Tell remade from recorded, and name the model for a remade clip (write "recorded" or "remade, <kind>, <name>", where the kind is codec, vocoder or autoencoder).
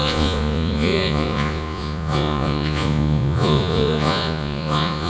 remade, vocoder, Vocos